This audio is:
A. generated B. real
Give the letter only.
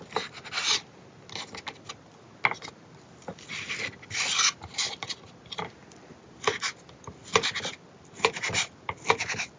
B